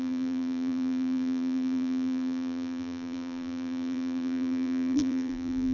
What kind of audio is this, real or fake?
fake